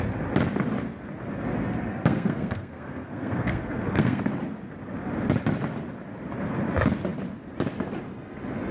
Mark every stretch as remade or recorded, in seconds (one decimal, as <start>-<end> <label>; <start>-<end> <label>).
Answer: 0.0-1.9 recorded; 1.9-4.2 remade; 4.2-8.7 recorded